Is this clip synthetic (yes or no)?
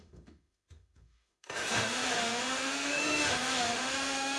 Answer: yes